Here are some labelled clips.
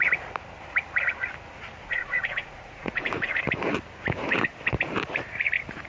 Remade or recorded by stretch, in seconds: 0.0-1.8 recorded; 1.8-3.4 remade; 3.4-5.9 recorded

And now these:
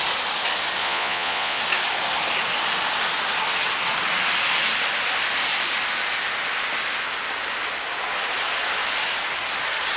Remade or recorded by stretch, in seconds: 0.0-0.8 recorded; 0.8-1.6 remade; 1.6-10.0 recorded